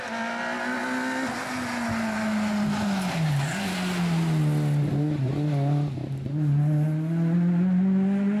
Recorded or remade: recorded